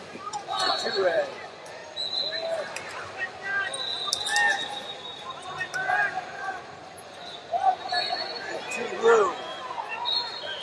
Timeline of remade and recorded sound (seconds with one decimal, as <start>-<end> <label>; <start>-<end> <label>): 0.0-1.8 remade; 1.8-6.8 recorded; 6.8-7.4 remade; 7.4-8.1 recorded; 8.1-10.6 remade